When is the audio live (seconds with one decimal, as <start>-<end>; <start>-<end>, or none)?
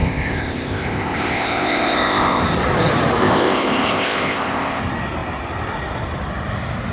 2.4-3.2; 4.8-6.9